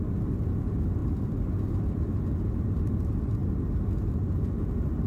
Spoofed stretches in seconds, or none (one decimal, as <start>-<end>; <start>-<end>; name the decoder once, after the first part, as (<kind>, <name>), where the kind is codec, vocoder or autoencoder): none